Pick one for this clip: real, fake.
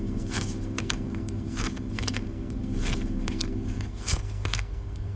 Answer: fake